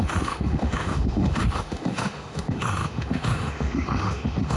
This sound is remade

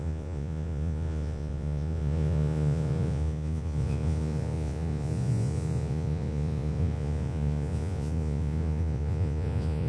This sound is remade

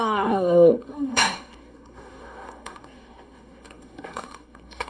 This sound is remade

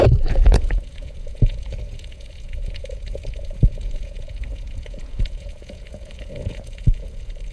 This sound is remade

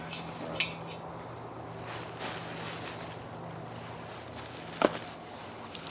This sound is recorded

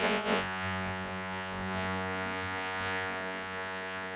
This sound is remade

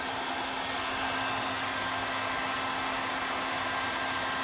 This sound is recorded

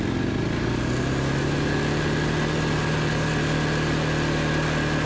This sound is recorded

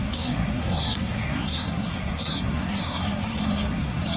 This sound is remade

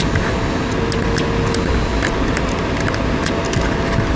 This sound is recorded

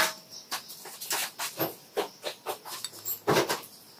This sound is recorded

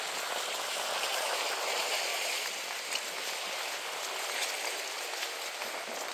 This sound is recorded